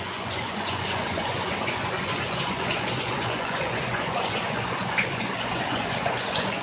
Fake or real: fake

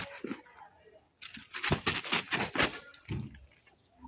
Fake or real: real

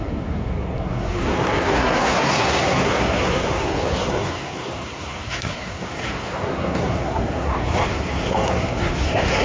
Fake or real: fake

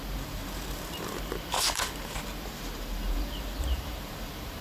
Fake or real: fake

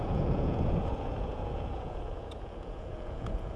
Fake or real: fake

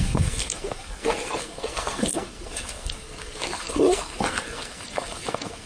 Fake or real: fake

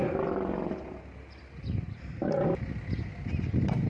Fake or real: real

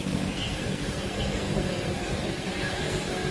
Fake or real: fake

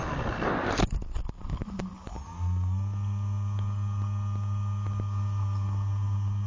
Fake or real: real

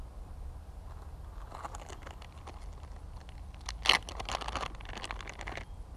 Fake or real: real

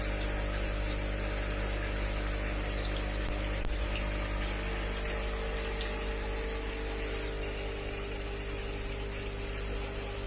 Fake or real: real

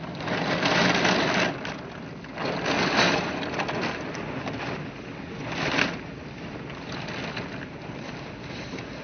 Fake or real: real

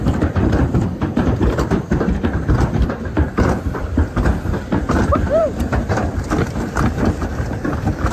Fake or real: fake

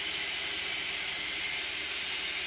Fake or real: real